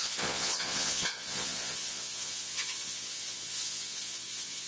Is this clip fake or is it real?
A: fake